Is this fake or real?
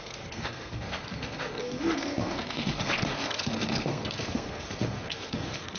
fake